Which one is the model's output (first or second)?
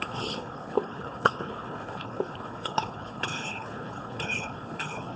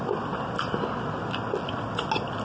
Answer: first